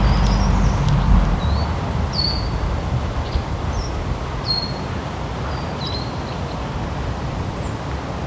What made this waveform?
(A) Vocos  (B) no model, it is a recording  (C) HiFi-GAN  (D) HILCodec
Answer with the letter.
B